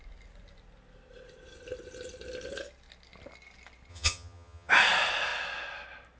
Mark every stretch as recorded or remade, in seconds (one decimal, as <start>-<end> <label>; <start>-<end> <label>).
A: 0.0-3.9 recorded; 3.9-4.7 remade; 4.7-6.2 recorded